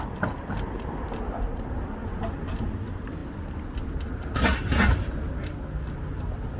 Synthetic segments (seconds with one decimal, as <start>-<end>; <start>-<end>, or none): none